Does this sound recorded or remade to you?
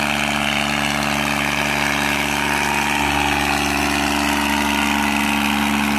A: recorded